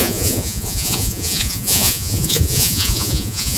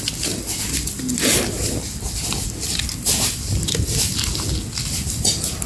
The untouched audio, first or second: second